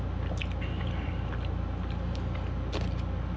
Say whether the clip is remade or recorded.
recorded